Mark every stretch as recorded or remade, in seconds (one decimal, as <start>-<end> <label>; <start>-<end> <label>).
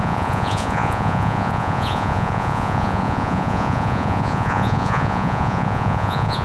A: 0.0-6.4 remade